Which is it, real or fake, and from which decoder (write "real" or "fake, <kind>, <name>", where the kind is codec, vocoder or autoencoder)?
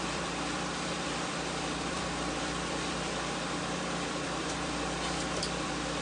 fake, vocoder, BigVGAN v2